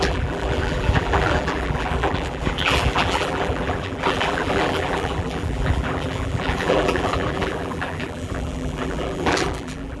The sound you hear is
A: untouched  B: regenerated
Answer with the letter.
B